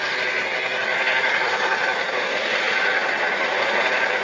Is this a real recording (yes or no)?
yes